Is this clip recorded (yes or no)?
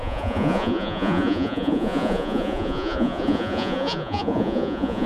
no